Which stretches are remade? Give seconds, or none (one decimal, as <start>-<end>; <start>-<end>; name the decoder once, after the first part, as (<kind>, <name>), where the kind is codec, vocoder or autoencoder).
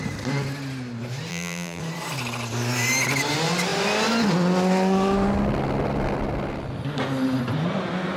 1.3-1.8 (vocoder, BigVGAN v2)